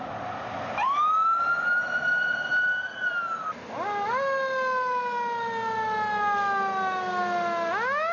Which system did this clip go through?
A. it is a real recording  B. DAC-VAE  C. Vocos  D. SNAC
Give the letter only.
A